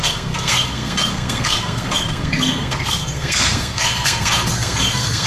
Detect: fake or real fake